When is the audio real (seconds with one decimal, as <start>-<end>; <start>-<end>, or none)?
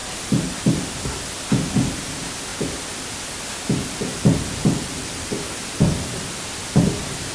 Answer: 0.9-4.1; 5.3-7.3